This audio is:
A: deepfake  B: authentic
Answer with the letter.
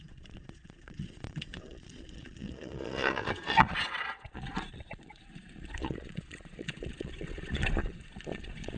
A